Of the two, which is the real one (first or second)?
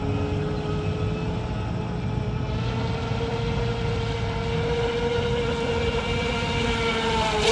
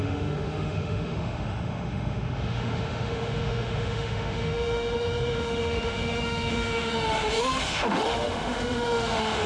first